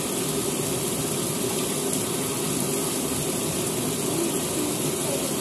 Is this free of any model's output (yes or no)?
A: yes